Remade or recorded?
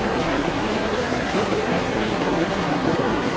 remade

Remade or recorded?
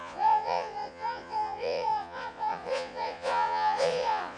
remade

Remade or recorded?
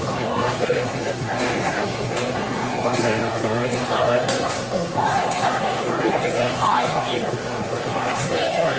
remade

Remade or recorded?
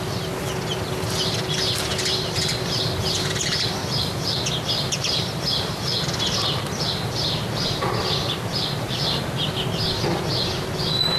recorded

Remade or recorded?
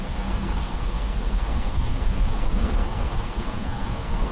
remade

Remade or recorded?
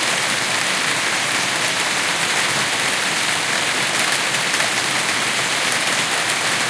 recorded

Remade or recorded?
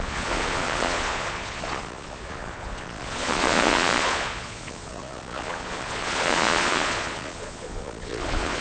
remade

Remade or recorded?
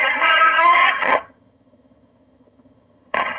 remade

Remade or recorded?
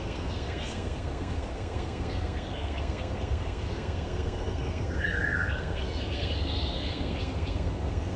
remade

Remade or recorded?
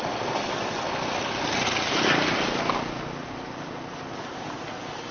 recorded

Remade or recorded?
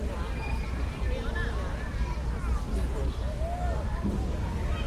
recorded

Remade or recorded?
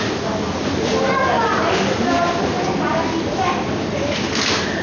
recorded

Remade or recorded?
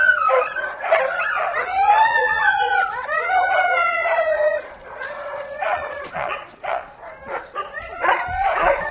remade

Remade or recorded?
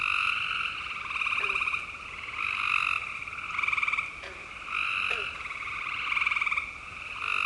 recorded